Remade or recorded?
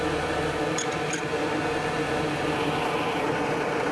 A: recorded